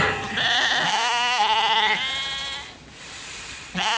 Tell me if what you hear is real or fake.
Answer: real